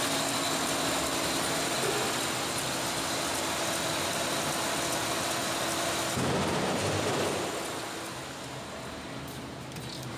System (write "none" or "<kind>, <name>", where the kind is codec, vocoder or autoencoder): none